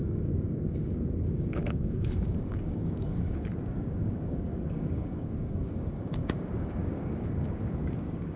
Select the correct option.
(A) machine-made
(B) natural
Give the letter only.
A